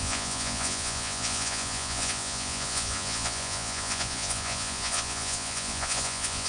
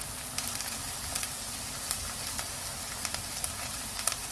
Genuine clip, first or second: second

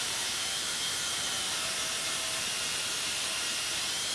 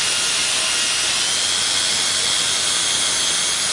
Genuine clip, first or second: second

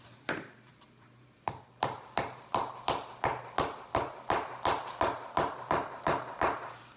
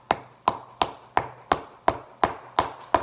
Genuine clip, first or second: second